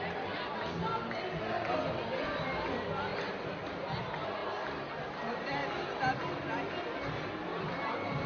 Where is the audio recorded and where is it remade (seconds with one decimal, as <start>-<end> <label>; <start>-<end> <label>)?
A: 0.0-4.4 recorded; 4.4-4.9 remade; 4.9-7.5 recorded; 7.5-8.3 remade